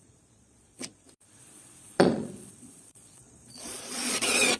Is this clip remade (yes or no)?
yes